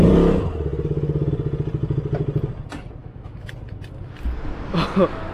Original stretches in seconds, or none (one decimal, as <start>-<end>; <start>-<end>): 0.0-3.0; 3.5-5.3